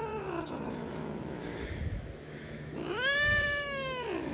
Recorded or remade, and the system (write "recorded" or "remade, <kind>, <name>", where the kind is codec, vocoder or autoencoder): remade, autoencoder, DAC-VAE